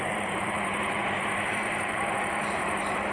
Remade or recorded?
remade